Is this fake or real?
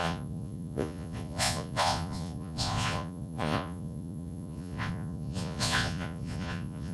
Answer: fake